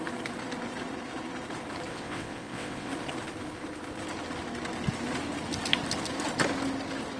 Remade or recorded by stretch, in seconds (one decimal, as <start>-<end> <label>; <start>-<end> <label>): 0.0-1.9 recorded; 1.9-2.9 remade; 2.9-7.2 recorded